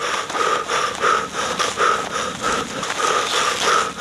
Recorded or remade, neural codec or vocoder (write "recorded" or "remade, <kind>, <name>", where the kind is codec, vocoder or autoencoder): recorded